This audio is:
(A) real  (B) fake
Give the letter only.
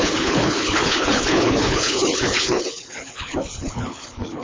B